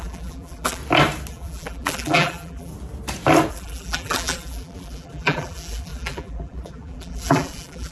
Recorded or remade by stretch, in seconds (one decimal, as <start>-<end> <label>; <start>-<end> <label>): 0.0-0.8 remade; 0.8-1.3 recorded; 1.3-2.7 remade; 2.7-3.5 recorded; 3.5-7.9 remade

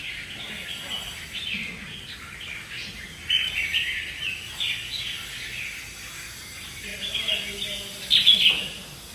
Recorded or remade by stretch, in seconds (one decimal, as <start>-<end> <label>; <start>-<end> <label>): 0.0-9.1 recorded